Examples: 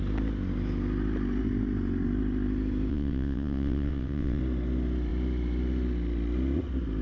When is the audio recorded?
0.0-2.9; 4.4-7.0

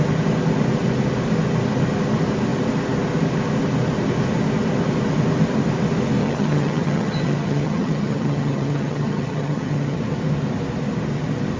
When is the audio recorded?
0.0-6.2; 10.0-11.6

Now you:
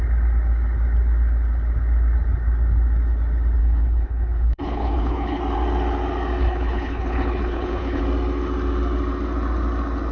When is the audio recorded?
0.0-3.6; 5.4-6.4; 8.0-10.1

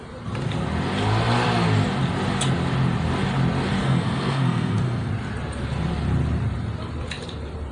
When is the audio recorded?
0.0-3.8; 5.1-7.7

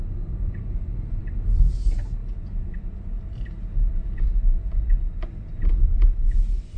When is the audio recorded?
0.0-6.8